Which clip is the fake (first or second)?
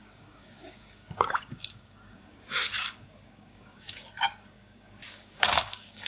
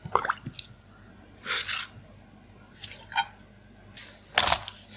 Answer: first